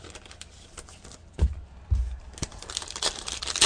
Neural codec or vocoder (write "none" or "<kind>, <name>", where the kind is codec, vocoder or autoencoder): none